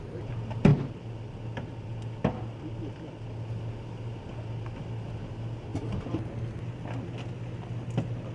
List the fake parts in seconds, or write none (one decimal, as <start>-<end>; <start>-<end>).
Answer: none